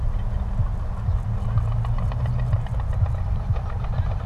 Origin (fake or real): real